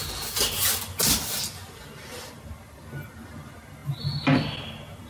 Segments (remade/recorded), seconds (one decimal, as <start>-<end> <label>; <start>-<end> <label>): 0.0-5.1 recorded